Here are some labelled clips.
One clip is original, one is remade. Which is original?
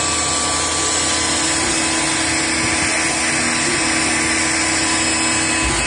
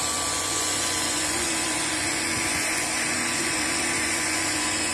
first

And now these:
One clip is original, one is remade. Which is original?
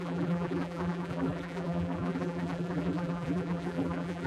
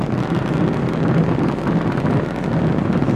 second